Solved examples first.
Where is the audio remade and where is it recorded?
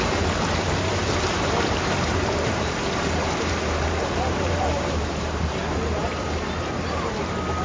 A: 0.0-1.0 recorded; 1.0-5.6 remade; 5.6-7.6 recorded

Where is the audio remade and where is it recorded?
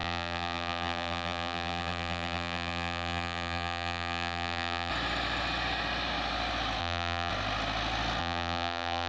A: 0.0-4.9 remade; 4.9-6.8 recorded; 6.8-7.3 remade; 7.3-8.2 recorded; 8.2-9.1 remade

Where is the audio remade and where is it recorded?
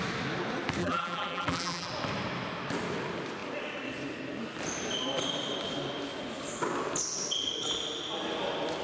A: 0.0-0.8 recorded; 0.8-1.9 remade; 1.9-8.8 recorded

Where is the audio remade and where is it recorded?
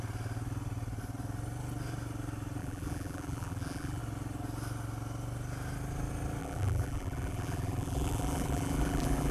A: 0.0-2.6 recorded; 2.6-4.0 remade; 4.0-6.4 recorded; 6.4-9.3 remade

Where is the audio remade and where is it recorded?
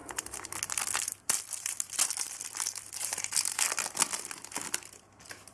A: 0.0-3.3 remade; 3.3-5.5 recorded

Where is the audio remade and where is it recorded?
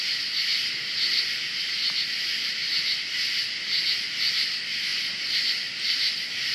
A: 0.0-4.9 recorded; 4.9-5.5 remade; 5.5-6.5 recorded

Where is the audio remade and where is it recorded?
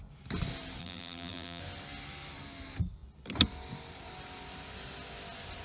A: 0.0-0.8 recorded; 0.8-1.6 remade; 1.6-5.6 recorded